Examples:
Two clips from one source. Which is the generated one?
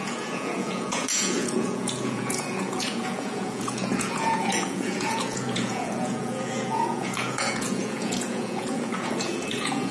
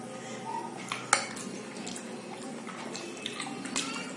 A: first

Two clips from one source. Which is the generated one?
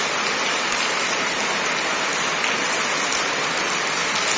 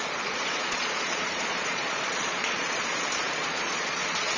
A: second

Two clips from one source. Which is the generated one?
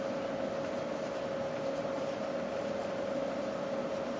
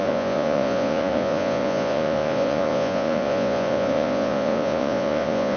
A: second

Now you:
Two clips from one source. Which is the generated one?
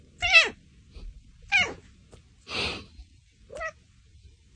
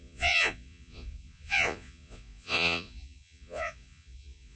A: second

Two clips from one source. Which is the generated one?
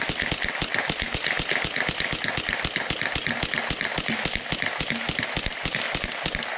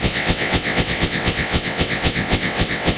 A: second